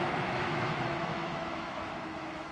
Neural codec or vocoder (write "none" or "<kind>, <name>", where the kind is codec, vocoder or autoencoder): autoencoder, DAC-VAE